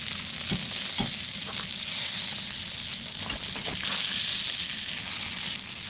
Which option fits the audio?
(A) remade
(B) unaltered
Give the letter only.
B